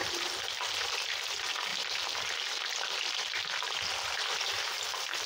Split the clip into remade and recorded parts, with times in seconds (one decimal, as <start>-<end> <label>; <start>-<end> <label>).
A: 0.0-1.1 remade; 1.1-5.3 recorded

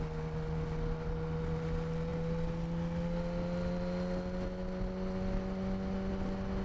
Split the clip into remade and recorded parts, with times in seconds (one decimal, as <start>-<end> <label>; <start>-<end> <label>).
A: 0.0-6.6 recorded

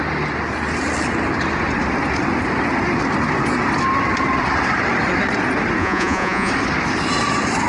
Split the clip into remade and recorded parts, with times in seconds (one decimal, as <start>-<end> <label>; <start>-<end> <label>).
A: 0.0-5.8 recorded; 5.8-6.5 remade; 6.5-7.7 recorded

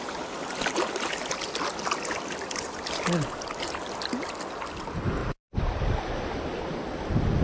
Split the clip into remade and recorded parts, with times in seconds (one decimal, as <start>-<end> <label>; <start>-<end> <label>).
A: 0.0-5.2 recorded; 5.2-5.8 remade; 5.8-7.4 recorded

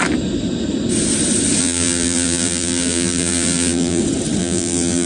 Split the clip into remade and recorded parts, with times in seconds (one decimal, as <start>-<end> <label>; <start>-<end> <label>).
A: 0.0-1.6 recorded; 1.6-4.0 remade; 4.0-4.4 recorded; 4.4-5.1 remade